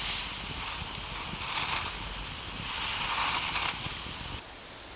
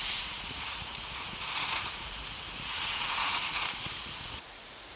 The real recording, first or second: first